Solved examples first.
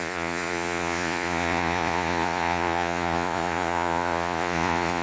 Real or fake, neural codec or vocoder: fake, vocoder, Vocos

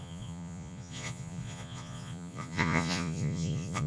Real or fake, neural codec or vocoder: fake, vocoder, Vocos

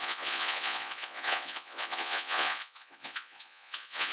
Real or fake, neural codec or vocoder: fake, vocoder, Vocos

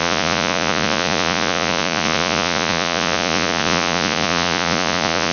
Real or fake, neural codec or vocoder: fake, vocoder, Vocos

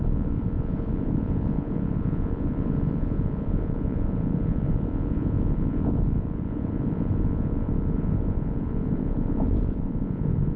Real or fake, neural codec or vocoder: fake, vocoder, Vocos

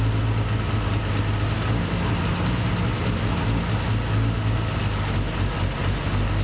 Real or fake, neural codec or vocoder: real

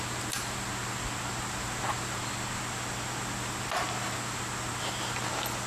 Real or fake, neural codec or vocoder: real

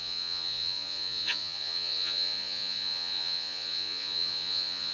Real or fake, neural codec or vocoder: fake, vocoder, Vocos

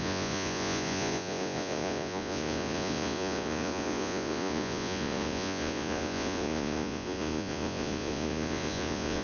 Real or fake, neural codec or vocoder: fake, vocoder, Vocos